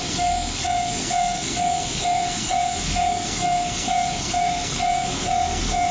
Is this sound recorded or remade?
remade